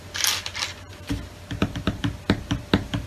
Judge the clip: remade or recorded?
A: recorded